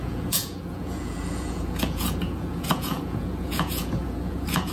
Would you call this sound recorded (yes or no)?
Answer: no